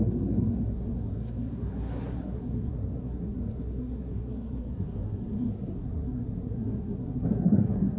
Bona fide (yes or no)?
no